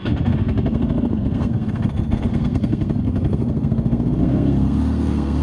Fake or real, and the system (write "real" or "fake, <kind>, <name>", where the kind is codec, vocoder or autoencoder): fake, codec, SNAC